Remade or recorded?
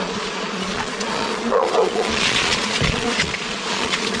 remade